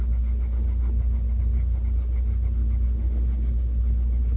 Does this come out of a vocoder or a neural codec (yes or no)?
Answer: no